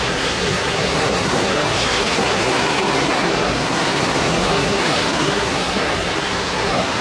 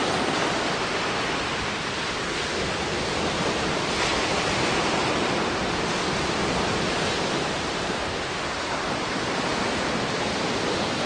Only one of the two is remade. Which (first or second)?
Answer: first